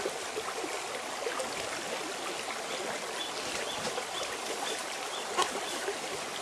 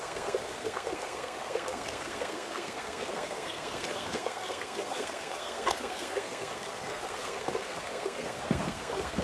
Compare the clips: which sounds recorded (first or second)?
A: first